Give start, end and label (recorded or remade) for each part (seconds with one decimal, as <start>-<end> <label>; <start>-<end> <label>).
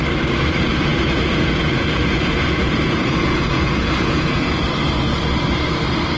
0.0-0.9 recorded; 0.9-4.6 remade; 4.6-6.2 recorded